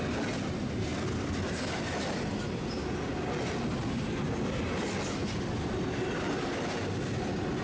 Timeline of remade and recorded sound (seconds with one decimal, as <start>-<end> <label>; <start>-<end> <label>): 0.0-7.6 recorded